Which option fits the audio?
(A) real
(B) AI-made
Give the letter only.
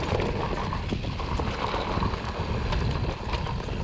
A